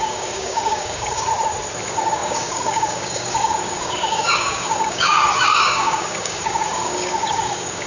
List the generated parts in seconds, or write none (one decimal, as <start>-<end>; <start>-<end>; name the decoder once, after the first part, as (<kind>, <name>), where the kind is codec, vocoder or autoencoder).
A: 0.0-1.3 (codec, DAC); 1.8-7.9